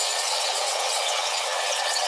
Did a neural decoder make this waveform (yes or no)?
yes